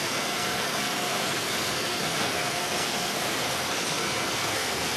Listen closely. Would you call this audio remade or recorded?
remade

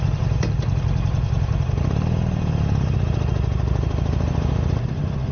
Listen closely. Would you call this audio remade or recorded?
remade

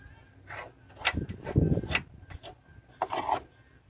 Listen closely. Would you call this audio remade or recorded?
recorded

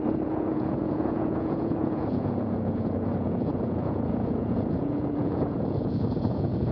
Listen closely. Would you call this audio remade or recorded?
remade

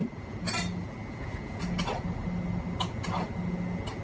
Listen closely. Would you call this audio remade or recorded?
recorded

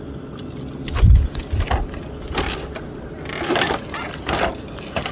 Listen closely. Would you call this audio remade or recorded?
recorded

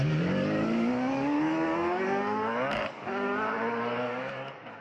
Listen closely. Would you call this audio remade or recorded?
remade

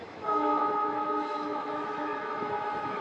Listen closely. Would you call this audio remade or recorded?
remade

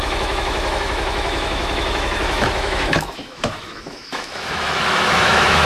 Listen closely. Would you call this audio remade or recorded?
remade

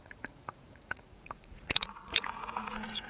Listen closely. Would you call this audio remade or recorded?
remade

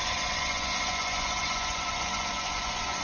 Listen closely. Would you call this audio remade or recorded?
remade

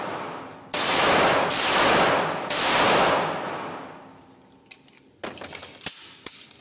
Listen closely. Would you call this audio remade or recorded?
recorded